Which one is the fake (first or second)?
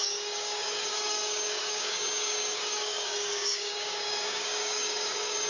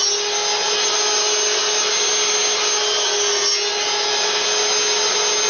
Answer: first